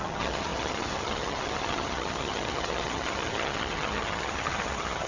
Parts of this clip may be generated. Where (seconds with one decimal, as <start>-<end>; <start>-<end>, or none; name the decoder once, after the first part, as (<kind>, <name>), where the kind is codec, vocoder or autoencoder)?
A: 0.0-5.1 (vocoder, HiFi-GAN)